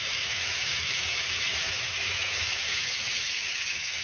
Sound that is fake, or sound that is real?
fake